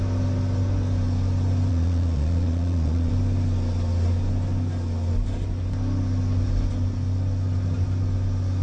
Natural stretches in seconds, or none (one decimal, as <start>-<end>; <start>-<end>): 0.0-1.7; 3.1-8.6